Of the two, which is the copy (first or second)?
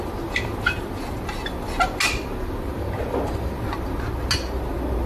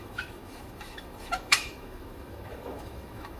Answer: second